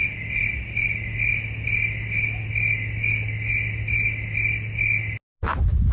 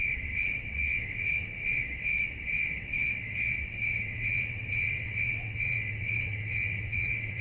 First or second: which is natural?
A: first